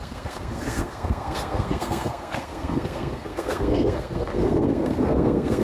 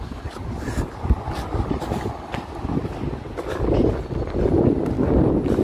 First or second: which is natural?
second